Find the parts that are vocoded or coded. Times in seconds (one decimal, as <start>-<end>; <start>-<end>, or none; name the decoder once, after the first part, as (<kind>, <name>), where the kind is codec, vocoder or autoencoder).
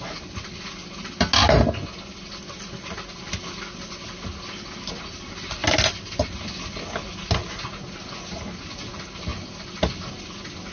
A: none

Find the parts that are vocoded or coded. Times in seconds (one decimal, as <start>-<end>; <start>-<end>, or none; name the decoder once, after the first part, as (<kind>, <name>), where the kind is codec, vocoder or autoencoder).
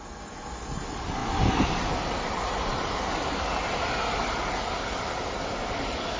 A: none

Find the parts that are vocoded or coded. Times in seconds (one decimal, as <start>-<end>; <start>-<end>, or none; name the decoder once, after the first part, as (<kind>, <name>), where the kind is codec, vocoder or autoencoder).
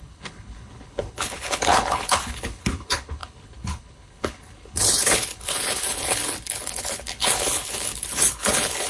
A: 0.0-8.9 (codec, HILCodec)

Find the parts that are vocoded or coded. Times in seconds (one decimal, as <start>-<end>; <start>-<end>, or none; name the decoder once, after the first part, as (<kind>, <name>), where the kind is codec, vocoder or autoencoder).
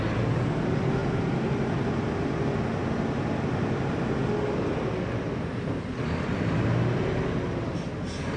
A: none